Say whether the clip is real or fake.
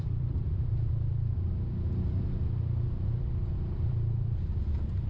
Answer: fake